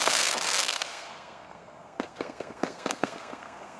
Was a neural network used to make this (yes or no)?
yes